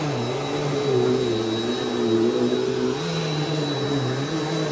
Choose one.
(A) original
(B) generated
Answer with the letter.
A